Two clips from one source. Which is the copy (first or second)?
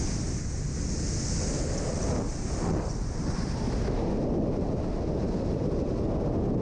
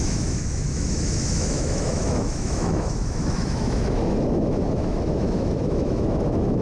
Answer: second